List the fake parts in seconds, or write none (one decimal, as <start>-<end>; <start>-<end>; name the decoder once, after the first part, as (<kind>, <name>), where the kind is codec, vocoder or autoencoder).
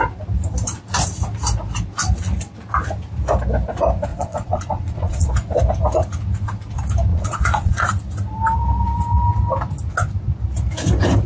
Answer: 4.1-5.3 (vocoder, Vocos); 7.1-7.8